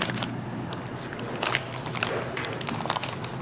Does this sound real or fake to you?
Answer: real